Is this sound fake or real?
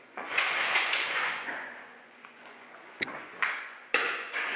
fake